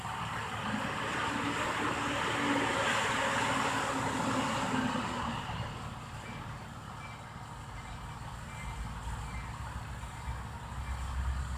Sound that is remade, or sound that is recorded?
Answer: recorded